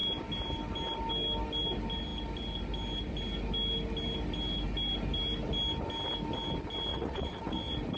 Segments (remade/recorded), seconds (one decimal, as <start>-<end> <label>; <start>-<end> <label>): 0.0-6.9 recorded; 6.9-7.6 remade; 7.6-8.0 recorded